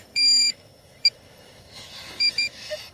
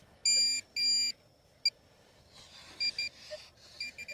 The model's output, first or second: first